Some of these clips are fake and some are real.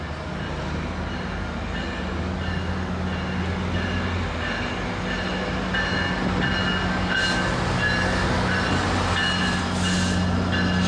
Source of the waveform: real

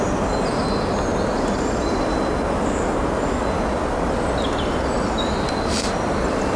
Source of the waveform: real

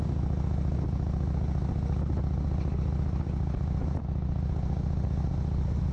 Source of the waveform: real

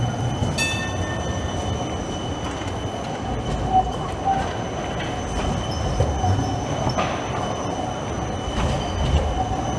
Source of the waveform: real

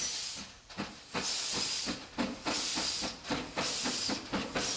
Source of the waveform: real